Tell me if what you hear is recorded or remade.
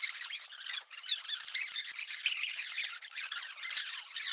recorded